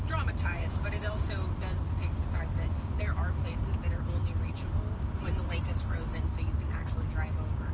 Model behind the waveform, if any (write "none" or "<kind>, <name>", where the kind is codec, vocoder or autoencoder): none